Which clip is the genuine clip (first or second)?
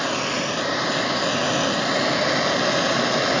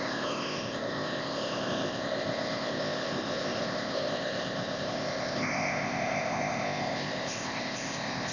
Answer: first